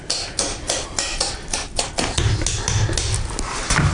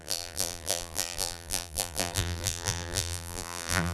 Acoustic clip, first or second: first